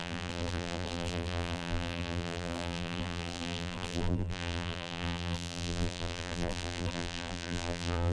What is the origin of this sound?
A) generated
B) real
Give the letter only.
A